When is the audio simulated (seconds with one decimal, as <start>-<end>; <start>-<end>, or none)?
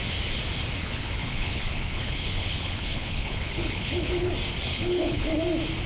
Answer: 0.8-4.3; 4.7-5.4